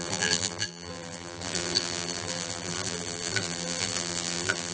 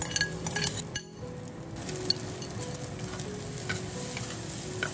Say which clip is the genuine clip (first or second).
second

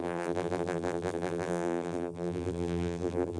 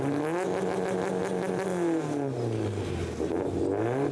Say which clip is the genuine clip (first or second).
second